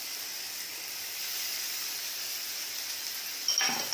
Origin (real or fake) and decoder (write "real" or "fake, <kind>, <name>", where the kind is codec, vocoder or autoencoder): real